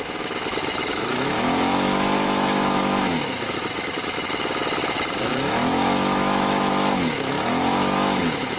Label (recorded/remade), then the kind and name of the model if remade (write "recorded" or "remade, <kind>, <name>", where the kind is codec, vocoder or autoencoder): remade, autoencoder, DAC-VAE